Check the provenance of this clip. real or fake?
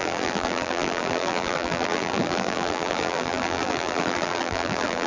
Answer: fake